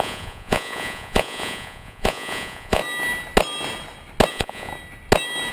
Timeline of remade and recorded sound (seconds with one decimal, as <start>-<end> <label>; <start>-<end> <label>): 0.0-2.8 remade; 2.8-4.3 recorded; 4.3-4.7 remade; 4.7-5.5 recorded